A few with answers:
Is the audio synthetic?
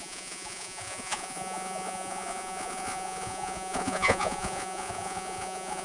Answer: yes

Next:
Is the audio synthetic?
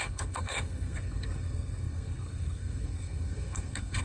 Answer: yes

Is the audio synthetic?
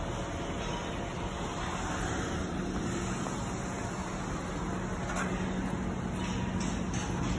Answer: no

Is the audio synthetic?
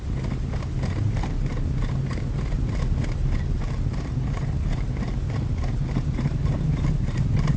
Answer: no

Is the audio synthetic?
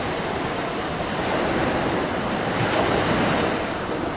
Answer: yes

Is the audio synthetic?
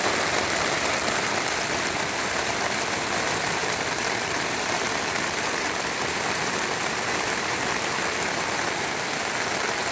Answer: yes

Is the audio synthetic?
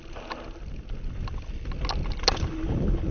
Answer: no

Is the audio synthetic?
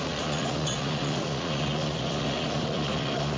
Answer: yes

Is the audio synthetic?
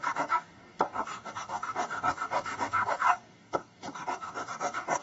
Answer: yes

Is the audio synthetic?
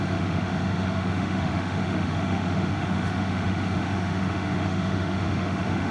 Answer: yes